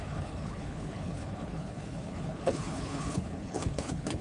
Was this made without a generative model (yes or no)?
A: no